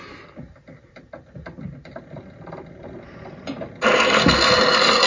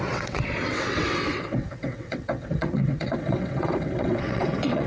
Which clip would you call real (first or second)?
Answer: first